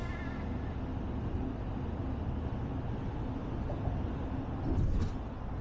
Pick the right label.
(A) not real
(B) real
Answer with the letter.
B